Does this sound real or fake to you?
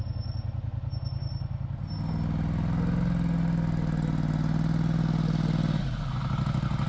real